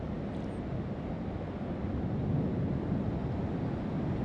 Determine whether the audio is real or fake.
real